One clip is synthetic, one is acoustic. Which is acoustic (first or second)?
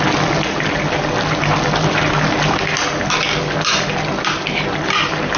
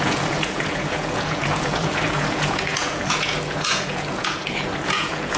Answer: first